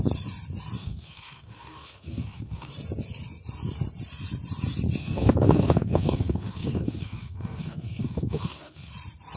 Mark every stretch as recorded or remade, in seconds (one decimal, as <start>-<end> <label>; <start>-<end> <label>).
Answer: 0.0-0.8 recorded; 0.8-2.7 remade; 2.7-5.0 recorded; 5.0-8.9 remade; 8.9-9.4 recorded